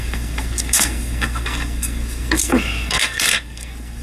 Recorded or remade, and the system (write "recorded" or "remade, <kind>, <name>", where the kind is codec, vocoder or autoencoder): remade, codec, SNAC